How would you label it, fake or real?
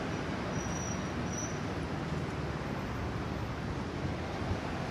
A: real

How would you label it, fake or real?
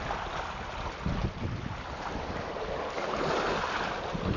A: real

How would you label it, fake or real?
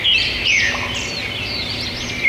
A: real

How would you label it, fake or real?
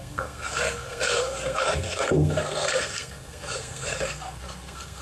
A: fake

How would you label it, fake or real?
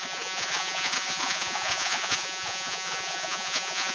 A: fake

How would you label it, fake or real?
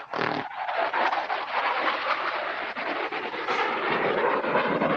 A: real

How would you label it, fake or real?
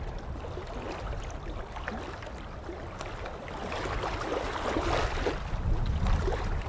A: real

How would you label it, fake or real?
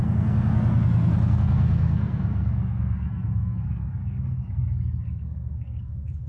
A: fake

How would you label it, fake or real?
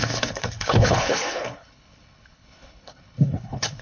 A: fake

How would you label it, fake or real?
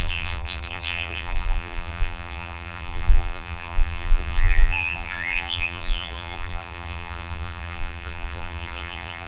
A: fake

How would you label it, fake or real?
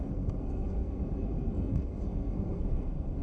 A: fake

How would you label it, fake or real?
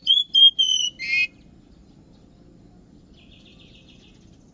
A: real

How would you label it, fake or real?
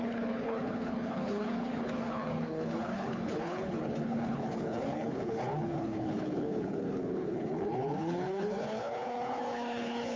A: fake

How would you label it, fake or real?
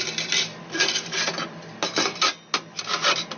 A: real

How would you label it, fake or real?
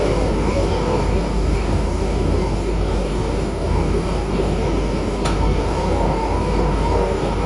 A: fake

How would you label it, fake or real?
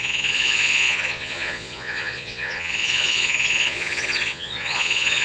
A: fake